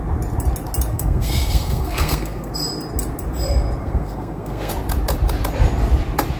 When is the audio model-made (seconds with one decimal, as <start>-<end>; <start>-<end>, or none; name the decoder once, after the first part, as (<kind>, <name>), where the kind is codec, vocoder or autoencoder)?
0.9-2.5 (codec, SNAC); 3.8-4.7